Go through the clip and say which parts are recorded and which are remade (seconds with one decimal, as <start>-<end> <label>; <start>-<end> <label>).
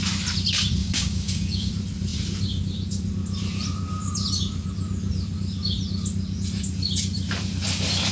0.0-0.8 recorded; 0.8-1.7 remade; 1.7-8.1 recorded